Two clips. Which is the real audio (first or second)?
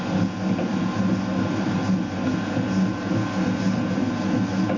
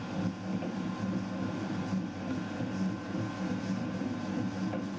first